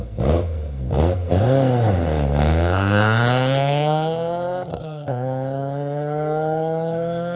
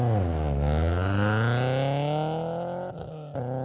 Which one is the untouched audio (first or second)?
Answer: second